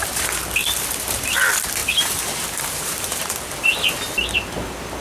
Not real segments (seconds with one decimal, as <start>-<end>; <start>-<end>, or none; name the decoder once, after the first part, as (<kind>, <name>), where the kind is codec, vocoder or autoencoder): 0.6-1.4 (vocoder, BigVGAN v2); 1.8-3.3